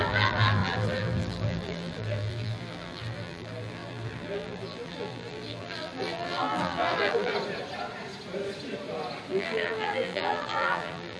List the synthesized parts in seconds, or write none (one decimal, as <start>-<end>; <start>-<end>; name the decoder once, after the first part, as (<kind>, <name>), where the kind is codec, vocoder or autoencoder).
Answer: 0.0-7.3 (vocoder, BigVGAN v2); 9.3-11.2

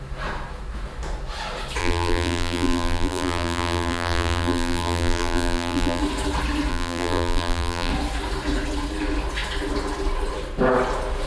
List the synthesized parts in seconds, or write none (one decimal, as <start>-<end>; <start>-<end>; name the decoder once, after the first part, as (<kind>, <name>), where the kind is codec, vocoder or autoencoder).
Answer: 1.8-6.0 (vocoder, BigVGAN v2); 6.7-7.9

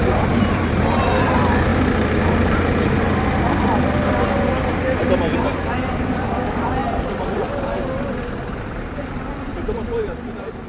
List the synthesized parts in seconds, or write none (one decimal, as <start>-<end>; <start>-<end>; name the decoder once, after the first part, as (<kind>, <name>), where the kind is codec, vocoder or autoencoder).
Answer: 0.0-1.7 (vocoder, BigVGAN v2); 5.8-6.8; 8.6-10.7